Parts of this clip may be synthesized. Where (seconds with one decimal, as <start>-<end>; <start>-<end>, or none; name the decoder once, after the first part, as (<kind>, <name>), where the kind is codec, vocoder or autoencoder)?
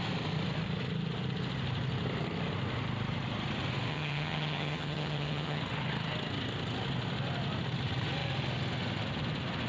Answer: 3.9-5.6 (vocoder, HiFi-GAN)